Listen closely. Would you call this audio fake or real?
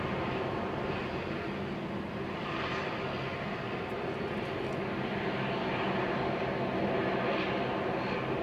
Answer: real